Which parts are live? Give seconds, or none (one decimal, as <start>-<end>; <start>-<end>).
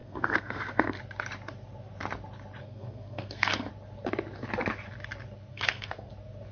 1.0-2.6; 3.7-5.5; 6.1-6.5